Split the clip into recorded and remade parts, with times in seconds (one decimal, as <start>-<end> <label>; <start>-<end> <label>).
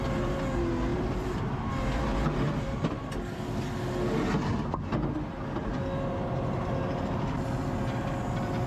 0.0-0.9 recorded; 0.9-1.7 remade; 1.7-8.7 recorded